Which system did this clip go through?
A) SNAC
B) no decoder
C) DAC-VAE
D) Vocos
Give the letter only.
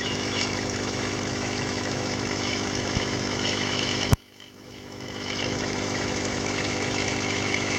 C